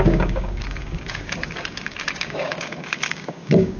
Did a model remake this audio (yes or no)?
yes